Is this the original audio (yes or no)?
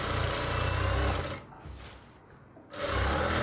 yes